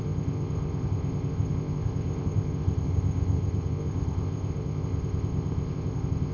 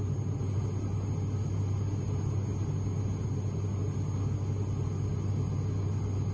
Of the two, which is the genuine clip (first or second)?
second